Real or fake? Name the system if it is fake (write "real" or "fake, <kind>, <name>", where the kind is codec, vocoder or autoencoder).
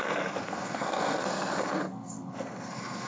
fake, codec, SNAC